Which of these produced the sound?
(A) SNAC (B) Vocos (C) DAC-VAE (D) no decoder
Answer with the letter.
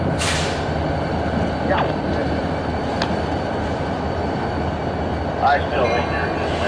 D